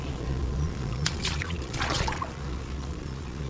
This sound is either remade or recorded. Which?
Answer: remade